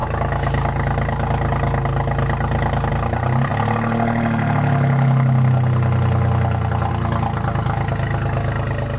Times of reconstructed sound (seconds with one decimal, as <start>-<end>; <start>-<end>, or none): none